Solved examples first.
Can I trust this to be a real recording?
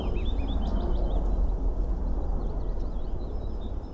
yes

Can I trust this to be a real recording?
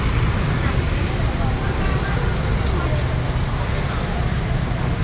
yes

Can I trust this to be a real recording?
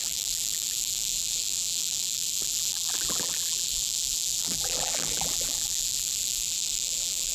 no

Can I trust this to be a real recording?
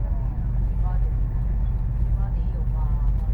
yes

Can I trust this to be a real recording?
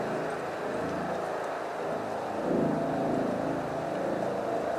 yes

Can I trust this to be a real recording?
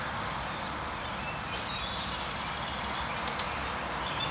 yes